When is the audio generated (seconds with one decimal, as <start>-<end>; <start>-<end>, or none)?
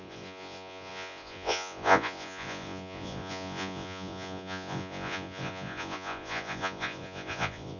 0.0-7.8